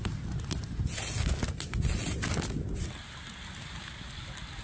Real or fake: real